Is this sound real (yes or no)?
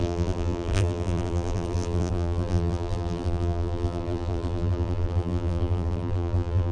no